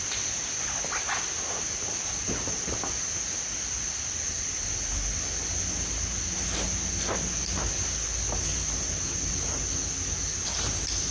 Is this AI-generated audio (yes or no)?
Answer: no